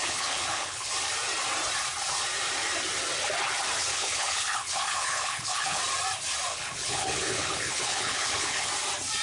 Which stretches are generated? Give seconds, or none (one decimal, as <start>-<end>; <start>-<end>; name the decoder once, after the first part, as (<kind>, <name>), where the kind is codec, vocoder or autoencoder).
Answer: 0.0-0.9 (codec, HILCodec); 3.9-5.8; 6.5-8.7